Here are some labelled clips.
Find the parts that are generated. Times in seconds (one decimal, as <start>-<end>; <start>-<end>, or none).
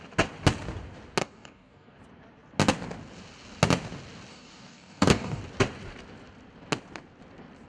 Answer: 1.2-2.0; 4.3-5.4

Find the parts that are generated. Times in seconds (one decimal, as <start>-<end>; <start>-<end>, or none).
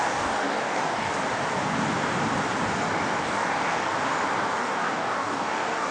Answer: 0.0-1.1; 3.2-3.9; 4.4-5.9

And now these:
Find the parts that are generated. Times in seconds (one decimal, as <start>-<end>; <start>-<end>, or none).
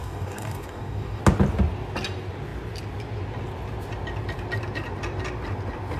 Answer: 0.0-1.2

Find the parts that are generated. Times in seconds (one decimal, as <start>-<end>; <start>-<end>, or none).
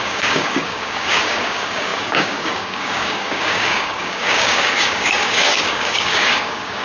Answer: 0.0-6.8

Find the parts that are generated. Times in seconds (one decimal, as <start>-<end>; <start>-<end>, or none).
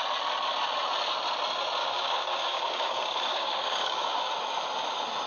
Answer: 1.8-4.3